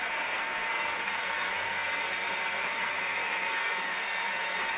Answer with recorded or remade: remade